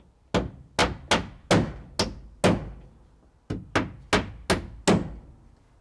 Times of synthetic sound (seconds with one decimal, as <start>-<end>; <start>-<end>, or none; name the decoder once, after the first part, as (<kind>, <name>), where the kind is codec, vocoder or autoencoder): none